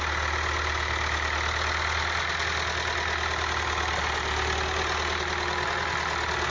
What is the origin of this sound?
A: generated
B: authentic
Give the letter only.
B